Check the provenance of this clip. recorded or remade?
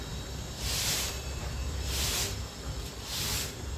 remade